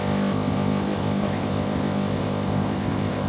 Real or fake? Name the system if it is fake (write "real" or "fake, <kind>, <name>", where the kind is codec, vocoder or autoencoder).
fake, codec, ZipCodec